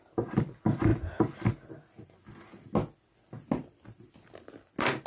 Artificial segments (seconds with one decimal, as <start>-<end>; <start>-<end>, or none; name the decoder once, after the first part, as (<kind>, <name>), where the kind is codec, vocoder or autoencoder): none